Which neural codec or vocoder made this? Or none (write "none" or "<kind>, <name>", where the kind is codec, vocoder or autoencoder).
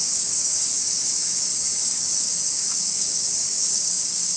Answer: codec, DAC